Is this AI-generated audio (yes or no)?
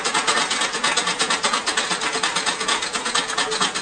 no